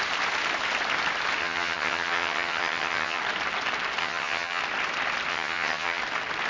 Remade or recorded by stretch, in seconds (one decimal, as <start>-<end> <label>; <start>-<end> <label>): 0.0-1.4 recorded; 1.4-3.2 remade; 3.2-4.0 recorded; 4.0-4.6 remade; 4.6-5.3 recorded; 5.3-6.0 remade; 6.0-6.5 recorded